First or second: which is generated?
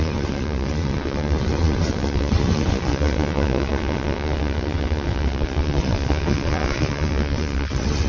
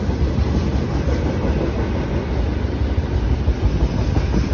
first